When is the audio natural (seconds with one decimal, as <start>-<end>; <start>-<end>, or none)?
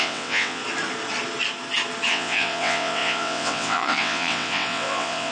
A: 0.6-2.1